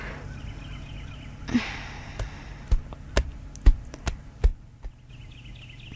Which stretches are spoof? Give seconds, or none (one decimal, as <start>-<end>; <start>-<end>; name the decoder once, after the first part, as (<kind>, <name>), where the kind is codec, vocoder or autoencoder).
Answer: none